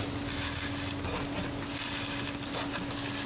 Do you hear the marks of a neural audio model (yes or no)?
no